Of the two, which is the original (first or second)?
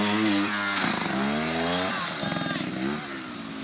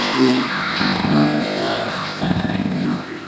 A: first